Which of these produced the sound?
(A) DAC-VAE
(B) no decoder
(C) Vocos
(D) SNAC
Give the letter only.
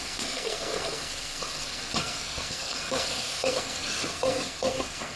D